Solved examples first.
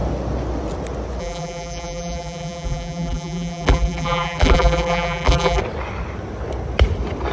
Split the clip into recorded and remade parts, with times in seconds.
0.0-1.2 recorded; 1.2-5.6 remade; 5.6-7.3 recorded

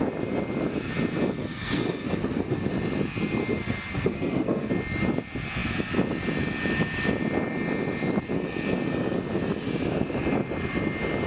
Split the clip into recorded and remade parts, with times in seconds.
0.0-1.4 recorded; 1.4-2.7 remade; 2.7-3.4 recorded; 3.4-4.7 remade; 4.7-11.3 recorded

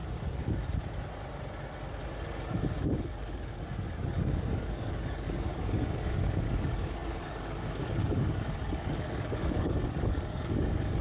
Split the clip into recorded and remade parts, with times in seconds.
0.0-2.6 recorded; 2.6-11.0 remade

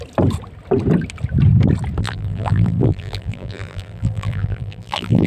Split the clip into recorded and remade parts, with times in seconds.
0.0-2.0 recorded; 2.0-5.3 remade

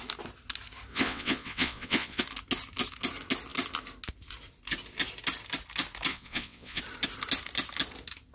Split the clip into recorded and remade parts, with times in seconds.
0.0-0.9 recorded; 0.9-2.2 remade; 2.2-6.1 recorded; 6.1-6.8 remade; 6.8-8.3 recorded

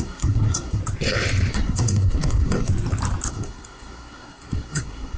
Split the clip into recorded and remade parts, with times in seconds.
0.0-0.8 remade; 0.8-1.5 recorded; 1.5-2.7 remade; 2.7-3.3 recorded; 3.3-5.2 remade

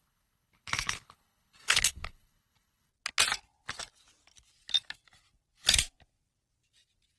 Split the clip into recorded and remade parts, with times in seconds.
0.0-2.9 remade; 2.9-7.2 recorded

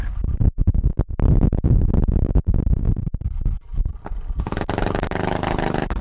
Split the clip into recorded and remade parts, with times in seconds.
0.0-6.0 recorded